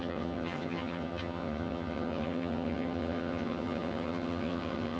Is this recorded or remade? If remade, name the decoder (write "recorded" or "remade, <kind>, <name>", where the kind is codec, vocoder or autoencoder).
remade, vocoder, HiFi-GAN